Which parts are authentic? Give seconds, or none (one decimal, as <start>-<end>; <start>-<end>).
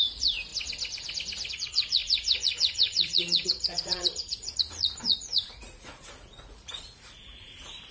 0.5-1.5